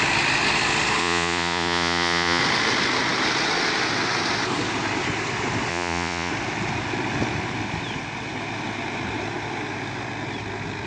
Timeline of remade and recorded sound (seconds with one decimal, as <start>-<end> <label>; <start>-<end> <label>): 0.0-1.0 recorded; 1.0-2.4 remade; 2.4-5.7 recorded; 5.7-6.3 remade; 6.3-10.9 recorded